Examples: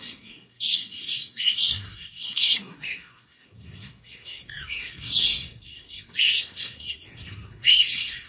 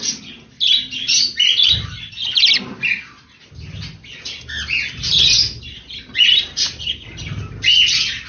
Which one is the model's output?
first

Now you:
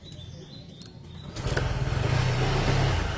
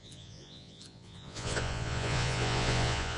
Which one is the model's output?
second